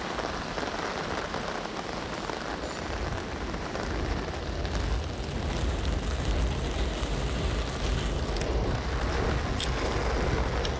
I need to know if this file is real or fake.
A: real